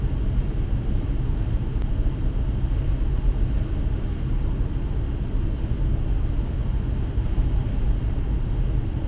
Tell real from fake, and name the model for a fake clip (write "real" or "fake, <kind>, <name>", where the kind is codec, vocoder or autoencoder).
real